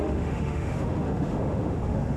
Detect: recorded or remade remade